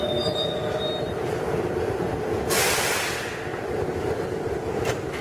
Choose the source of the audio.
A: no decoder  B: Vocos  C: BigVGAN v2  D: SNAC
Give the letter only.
A